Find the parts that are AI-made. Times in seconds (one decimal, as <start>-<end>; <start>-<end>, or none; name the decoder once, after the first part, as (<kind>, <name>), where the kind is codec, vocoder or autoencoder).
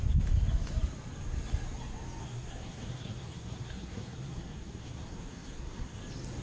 2.2-6.0 (codec, SNAC)